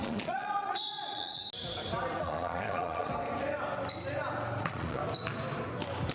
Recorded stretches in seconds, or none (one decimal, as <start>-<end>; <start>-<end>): 1.4-2.2; 3.1-4.6; 5.0-6.1